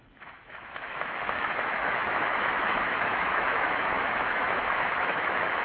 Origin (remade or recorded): remade